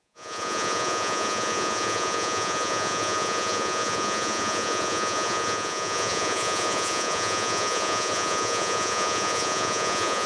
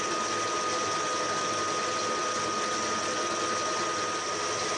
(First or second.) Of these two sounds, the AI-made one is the first